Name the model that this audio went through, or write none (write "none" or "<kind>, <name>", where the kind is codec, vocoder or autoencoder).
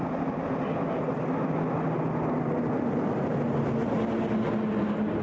none